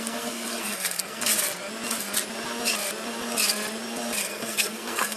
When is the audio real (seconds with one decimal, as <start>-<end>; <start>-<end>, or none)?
1.3-4.2